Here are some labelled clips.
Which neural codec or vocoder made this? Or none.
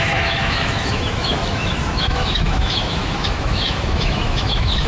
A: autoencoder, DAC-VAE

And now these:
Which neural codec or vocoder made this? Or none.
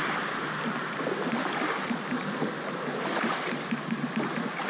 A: none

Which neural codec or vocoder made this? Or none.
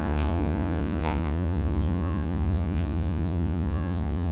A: vocoder, Vocos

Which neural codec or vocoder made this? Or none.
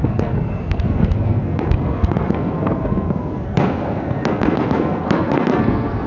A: codec, SNAC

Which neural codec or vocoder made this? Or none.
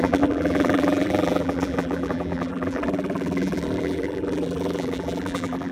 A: vocoder, BigVGAN v2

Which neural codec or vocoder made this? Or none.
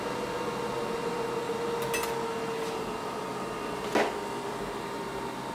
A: none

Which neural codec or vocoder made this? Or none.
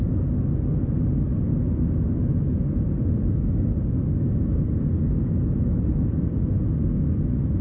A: none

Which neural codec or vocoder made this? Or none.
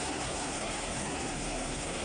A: codec, SNAC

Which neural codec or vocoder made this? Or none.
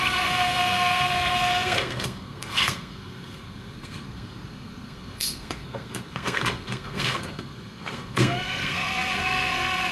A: codec, SNAC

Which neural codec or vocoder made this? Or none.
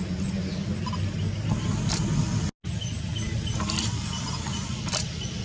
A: none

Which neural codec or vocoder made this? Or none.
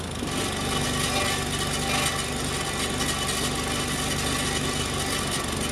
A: none